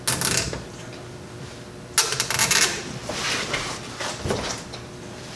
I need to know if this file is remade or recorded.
recorded